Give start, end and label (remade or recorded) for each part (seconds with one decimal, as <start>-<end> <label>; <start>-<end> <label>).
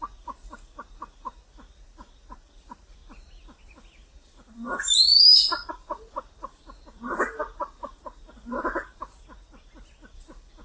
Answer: 0.0-10.6 remade